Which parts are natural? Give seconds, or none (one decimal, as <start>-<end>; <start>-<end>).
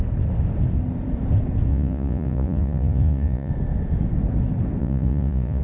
0.0-1.7; 3.5-4.8